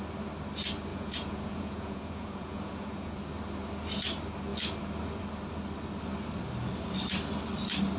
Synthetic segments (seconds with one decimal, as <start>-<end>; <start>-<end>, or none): 0.9-3.2

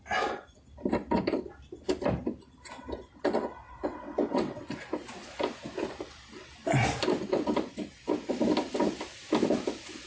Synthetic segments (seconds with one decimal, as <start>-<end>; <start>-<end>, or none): 3.6-4.7

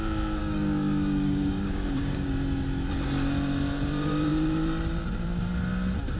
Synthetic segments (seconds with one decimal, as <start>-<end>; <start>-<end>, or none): 0.4-2.3

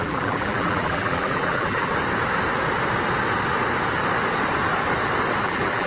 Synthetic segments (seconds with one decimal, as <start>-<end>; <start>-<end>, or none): 0.0-1.9; 5.4-5.9

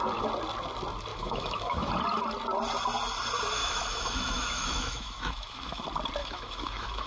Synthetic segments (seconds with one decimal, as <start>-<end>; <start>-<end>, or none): 1.1-1.9; 3.6-5.8; 6.2-7.1

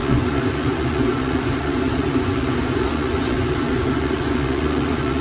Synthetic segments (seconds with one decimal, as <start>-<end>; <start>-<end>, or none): 0.0-5.2